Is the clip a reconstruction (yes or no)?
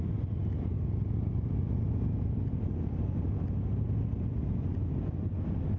no